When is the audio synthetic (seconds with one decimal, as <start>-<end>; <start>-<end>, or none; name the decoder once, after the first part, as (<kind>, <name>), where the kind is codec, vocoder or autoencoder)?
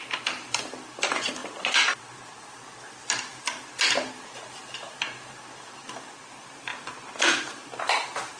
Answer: none